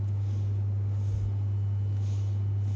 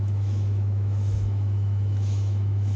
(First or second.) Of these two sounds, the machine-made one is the second